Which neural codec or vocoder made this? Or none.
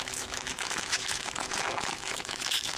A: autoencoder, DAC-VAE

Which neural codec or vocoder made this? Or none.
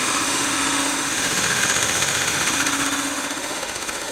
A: autoencoder, DAC-VAE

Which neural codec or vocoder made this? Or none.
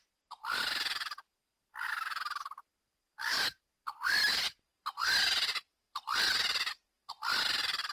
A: none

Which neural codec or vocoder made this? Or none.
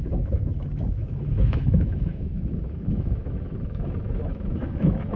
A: autoencoder, DAC-VAE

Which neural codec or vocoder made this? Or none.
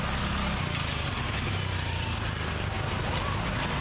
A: none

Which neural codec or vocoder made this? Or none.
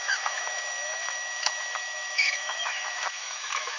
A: autoencoder, DAC-VAE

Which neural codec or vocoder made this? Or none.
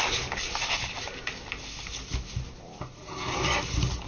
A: none